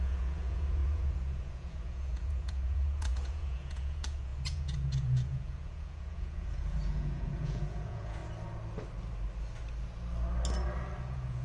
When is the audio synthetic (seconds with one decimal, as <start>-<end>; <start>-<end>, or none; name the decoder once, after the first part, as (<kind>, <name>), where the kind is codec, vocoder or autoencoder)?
0.0-8.2 (vocoder, Vocos); 11.0-11.4